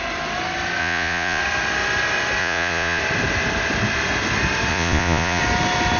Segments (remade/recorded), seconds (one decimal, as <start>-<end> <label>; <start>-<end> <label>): 0.0-0.8 recorded; 0.8-1.4 remade; 1.4-2.4 recorded; 2.4-3.0 remade; 3.0-4.7 recorded; 4.7-5.4 remade; 5.4-6.0 recorded